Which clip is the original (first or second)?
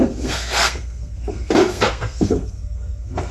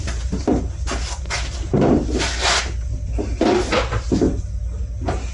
second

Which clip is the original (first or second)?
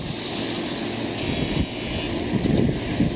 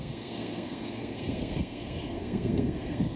first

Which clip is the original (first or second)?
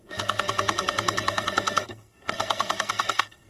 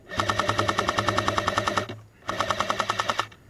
second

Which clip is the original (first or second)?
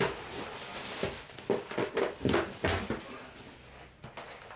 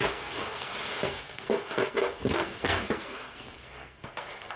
first